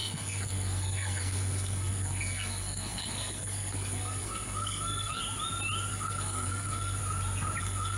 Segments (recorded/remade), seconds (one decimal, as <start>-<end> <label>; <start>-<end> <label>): 0.0-5.2 remade; 5.2-5.9 recorded; 5.9-7.0 remade; 7.0-7.6 recorded; 7.6-8.0 remade